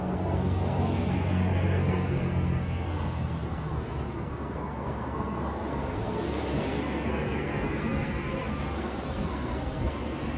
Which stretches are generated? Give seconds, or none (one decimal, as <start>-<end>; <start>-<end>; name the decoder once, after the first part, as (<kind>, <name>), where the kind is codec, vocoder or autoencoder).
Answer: 0.0-10.4 (codec, SNAC)